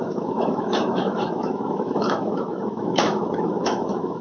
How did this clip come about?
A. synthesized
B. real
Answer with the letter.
A